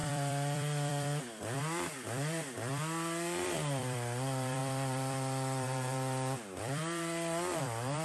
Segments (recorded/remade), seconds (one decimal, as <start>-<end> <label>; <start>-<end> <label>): 0.0-8.0 remade